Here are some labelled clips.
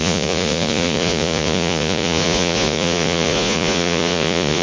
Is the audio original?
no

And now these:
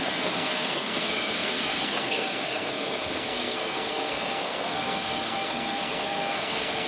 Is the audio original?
no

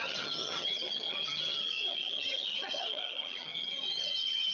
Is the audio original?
no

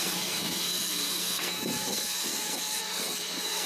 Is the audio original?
no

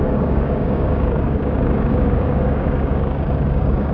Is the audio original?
no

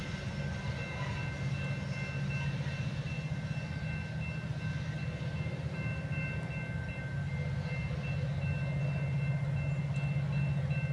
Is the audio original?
yes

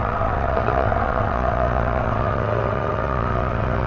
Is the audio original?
no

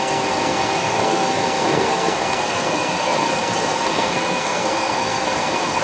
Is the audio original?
no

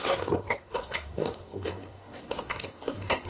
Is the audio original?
no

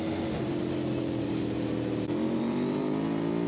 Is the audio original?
no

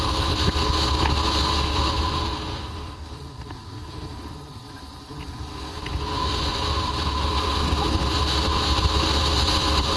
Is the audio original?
yes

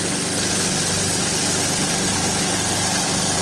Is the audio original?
yes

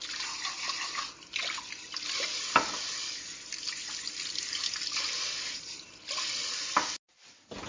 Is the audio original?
yes